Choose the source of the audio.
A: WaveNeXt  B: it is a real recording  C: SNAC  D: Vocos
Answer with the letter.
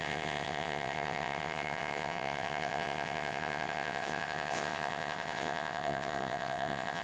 A